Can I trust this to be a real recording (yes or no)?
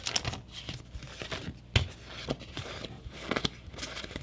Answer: yes